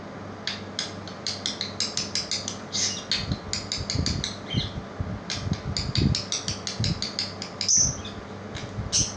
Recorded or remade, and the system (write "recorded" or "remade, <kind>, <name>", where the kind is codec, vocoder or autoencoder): recorded